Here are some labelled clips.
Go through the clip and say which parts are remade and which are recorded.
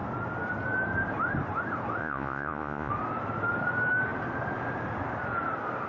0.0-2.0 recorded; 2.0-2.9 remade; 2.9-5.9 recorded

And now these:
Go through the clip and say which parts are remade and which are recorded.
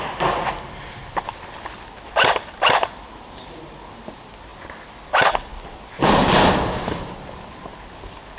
0.0-8.4 recorded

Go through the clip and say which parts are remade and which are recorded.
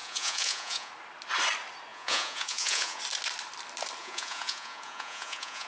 0.0-0.9 remade; 0.9-1.9 recorded; 1.9-3.0 remade; 3.0-4.0 recorded; 4.0-5.7 remade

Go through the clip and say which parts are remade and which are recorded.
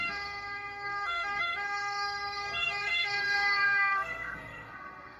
0.0-5.2 remade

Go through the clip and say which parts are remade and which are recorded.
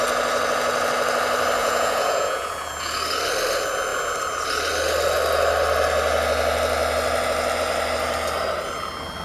0.0-1.6 recorded; 1.6-2.9 remade; 2.9-9.2 recorded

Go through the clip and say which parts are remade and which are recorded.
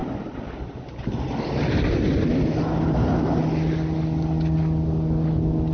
0.0-5.7 recorded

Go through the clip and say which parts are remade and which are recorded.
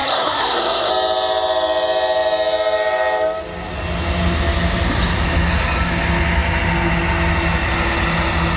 0.0-0.9 remade; 0.9-8.6 recorded